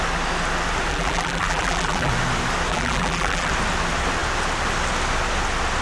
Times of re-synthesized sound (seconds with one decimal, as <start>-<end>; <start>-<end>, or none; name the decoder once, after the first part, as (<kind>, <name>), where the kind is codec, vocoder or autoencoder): 0.9-2.1 (vocoder, BigVGAN v2); 2.7-3.5